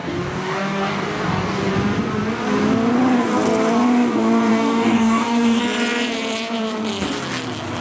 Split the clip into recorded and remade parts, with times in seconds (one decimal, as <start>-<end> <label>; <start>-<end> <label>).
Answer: 0.0-1.7 remade; 1.7-4.5 recorded; 4.5-5.6 remade; 5.6-7.8 recorded